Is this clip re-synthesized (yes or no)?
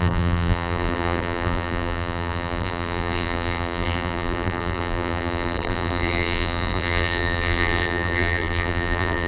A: yes